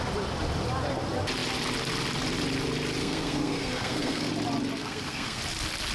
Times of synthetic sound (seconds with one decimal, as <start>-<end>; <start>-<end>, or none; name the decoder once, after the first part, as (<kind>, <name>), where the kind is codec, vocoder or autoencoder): 3.0-4.3 (codec, SNAC); 4.8-5.4